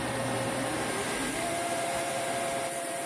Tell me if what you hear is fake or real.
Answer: fake